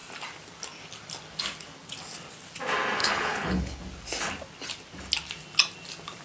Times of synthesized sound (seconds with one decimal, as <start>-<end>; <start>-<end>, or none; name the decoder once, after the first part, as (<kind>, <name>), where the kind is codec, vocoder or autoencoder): 3.0-3.8 (codec, HILCodec)